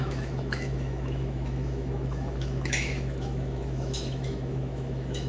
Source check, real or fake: fake